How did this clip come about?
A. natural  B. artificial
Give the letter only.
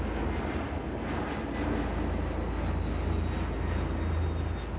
A